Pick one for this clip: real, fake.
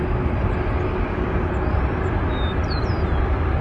real